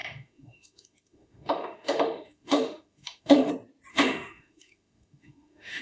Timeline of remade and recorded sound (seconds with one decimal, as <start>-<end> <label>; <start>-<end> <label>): 0.0-3.5 remade; 3.5-3.9 recorded; 3.9-5.8 remade